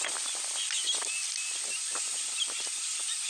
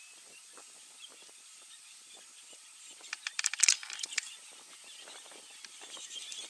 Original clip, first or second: first